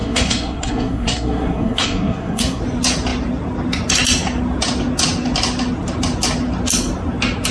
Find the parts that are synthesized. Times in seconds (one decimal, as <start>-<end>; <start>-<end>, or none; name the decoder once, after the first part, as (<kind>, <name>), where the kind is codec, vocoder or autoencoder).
0.0-2.6 (codec, SNAC)